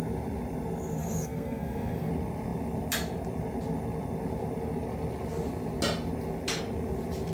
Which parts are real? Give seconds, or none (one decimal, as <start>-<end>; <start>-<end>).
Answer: 0.0-1.0; 2.1-7.3